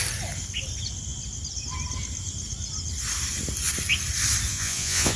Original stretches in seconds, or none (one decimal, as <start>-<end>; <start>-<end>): 0.0-4.5

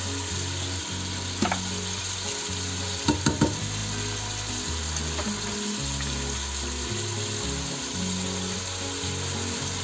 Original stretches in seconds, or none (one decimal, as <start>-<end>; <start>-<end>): 0.0-9.8

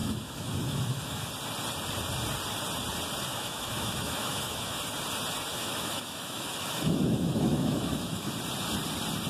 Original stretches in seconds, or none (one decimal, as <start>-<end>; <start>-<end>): 1.3-3.3; 4.8-5.5; 8.3-9.3

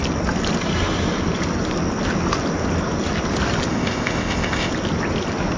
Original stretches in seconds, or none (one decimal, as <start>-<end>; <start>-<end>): 0.0-3.7; 4.7-5.6

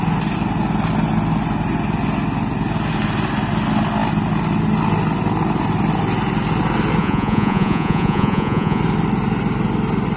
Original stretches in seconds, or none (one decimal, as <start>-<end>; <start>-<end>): 0.0-7.0; 8.8-10.2

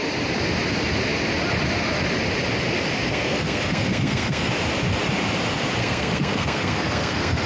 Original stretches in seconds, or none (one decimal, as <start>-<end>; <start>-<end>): 0.0-3.1; 4.5-5.8